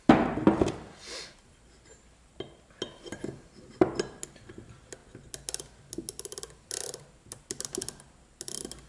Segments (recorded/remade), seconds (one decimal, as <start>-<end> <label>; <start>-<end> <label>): 0.0-8.9 recorded